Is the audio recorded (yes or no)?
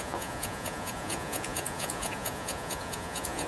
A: no